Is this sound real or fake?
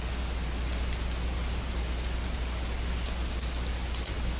real